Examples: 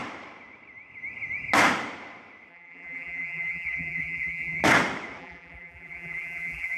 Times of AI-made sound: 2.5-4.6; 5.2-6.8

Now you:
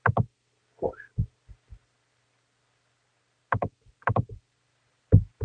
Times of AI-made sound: none

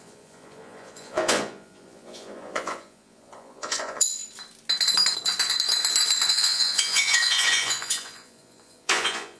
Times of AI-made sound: 0.0-4.2; 6.3-9.4

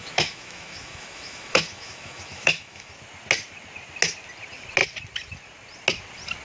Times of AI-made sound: 0.0-2.9

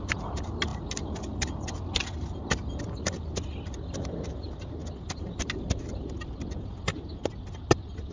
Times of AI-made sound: none

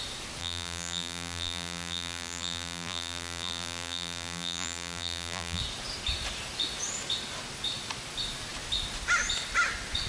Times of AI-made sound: 0.4-5.6

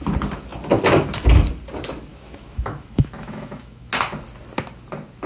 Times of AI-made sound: 2.1-3.9